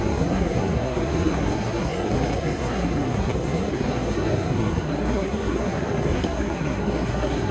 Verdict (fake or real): fake